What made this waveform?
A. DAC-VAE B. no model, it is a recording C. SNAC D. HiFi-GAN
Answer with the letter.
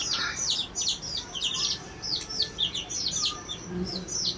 B